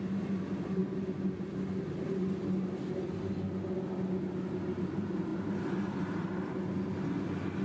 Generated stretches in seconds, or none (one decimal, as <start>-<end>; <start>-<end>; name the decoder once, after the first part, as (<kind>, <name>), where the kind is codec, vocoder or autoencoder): none